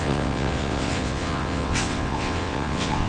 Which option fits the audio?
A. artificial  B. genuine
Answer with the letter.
A